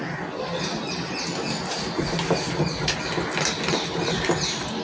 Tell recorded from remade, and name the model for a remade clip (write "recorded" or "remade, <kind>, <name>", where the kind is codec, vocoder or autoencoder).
recorded